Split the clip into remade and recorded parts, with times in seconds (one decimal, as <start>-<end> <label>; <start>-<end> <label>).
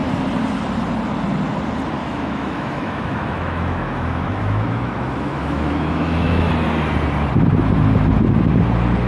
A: 0.0-2.0 recorded; 2.0-6.5 remade; 6.5-9.1 recorded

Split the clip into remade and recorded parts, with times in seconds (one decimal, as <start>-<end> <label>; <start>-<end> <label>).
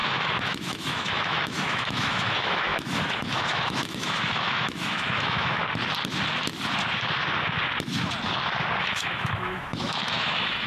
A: 0.0-5.6 remade; 5.6-8.8 recorded; 8.8-10.7 remade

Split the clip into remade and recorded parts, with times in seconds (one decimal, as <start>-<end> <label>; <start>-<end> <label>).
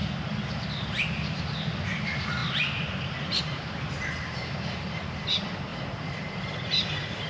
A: 0.0-7.3 recorded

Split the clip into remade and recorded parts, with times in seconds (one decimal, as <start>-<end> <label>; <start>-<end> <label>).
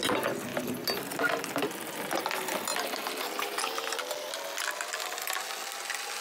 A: 0.0-6.2 recorded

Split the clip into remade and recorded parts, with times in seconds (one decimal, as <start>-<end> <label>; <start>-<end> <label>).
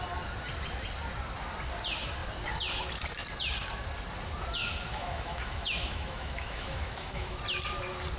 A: 0.0-4.6 recorded; 4.6-7.4 remade; 7.4-8.2 recorded